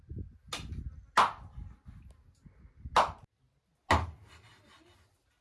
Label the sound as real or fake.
real